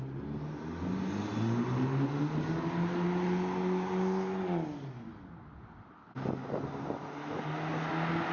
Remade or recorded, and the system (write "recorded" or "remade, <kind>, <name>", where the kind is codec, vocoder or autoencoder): recorded